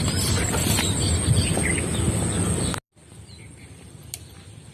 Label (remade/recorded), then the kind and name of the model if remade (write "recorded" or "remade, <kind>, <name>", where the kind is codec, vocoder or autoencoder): recorded